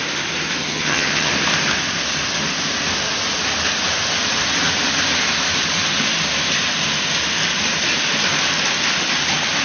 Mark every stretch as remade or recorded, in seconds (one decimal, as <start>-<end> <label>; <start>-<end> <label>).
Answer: 0.0-0.6 recorded; 0.6-1.3 remade; 1.3-9.6 recorded